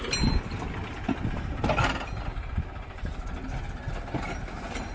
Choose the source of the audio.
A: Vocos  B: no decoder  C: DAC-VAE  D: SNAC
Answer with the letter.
B